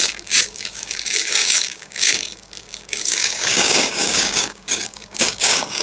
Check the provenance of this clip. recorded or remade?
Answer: remade